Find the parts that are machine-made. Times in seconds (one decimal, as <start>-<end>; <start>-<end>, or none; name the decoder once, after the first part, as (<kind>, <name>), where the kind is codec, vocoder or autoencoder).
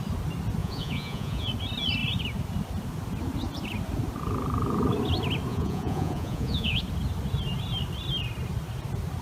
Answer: 0.6-1.5 (vocoder, Vocos); 5.5-6.8